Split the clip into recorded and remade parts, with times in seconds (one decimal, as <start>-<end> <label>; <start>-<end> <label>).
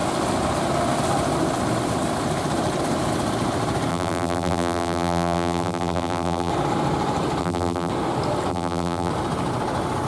0.0-3.9 recorded; 3.9-6.5 remade; 6.5-7.4 recorded; 7.4-7.9 remade; 7.9-8.5 recorded; 8.5-9.1 remade; 9.1-10.1 recorded